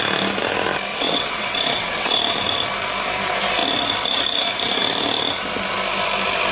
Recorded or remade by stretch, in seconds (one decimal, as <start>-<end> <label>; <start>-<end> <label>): 0.0-0.9 recorded; 0.9-2.2 remade; 2.2-6.5 recorded